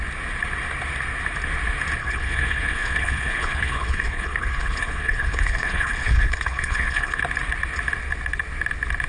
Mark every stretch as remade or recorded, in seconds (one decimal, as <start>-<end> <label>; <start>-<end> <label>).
0.0-2.0 recorded; 2.0-7.2 remade; 7.2-9.1 recorded